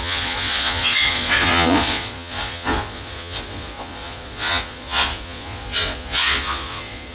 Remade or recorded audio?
remade